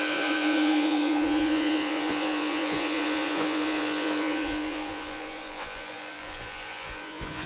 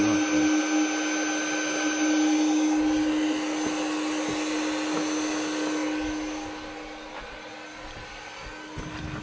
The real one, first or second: second